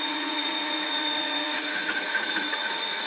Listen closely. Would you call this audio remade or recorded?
remade